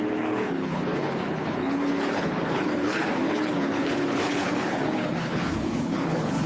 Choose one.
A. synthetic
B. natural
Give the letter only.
A